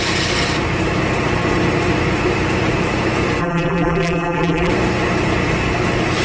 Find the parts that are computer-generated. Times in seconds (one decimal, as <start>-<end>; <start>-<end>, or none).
3.4-4.7